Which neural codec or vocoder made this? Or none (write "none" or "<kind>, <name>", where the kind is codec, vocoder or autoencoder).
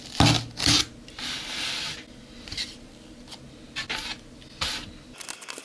none